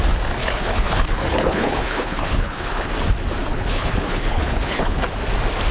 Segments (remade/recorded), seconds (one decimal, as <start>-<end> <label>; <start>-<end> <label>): 0.0-0.4 recorded; 0.4-2.9 remade; 2.9-3.5 recorded; 3.5-5.0 remade; 5.0-5.7 recorded